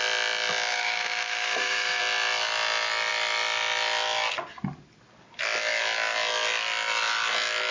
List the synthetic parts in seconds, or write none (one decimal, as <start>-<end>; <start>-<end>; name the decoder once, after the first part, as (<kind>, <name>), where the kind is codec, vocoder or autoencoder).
0.7-2.0 (autoencoder, DAC-VAE)